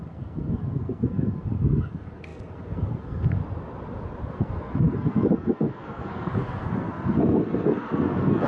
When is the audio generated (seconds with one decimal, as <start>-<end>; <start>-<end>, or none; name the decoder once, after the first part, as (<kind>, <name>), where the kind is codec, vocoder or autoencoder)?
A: 0.0-3.4 (codec, SNAC); 4.3-8.5